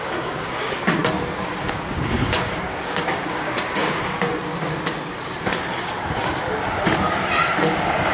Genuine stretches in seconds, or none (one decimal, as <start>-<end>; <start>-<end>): 1.0-1.6; 4.3-7.6